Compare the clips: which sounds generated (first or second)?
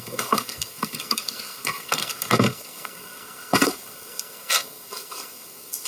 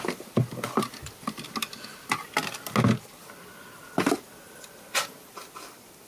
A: first